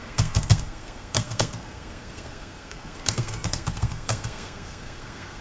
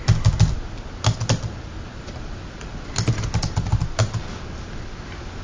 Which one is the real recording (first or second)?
second